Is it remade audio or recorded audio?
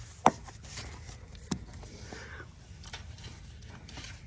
remade